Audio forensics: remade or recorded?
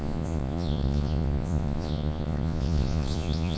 remade